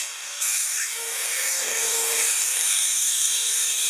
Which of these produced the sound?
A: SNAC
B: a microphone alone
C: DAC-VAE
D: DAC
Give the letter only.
D